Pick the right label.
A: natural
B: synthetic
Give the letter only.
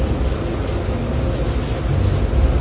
A